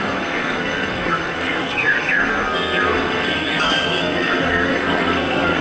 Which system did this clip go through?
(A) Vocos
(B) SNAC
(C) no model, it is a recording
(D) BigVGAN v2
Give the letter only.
B